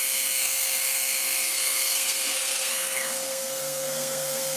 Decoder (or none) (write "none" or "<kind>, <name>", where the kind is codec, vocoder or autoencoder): codec, SNAC